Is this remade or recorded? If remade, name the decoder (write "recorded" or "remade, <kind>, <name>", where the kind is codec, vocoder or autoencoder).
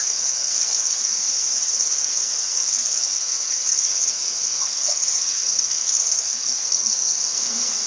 remade, codec, SNAC